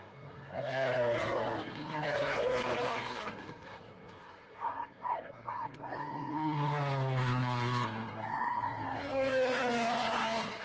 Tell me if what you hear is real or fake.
fake